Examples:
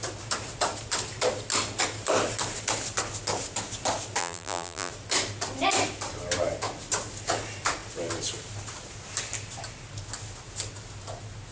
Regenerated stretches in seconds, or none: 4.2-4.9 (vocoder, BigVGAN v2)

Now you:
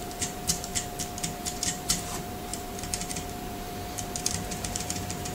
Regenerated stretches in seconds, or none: 0.0-0.7 (vocoder, BigVGAN v2); 1.4-5.3

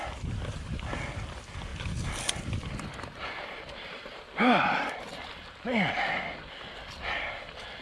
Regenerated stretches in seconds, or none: 1.7-5.4 (vocoder, BigVGAN v2)

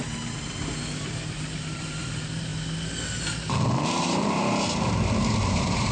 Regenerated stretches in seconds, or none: 0.0-2.5 (vocoder, BigVGAN v2); 3.9-4.4; 5.4-5.9

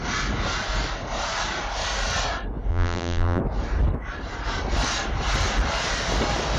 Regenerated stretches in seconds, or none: 2.7-3.4 (vocoder, BigVGAN v2)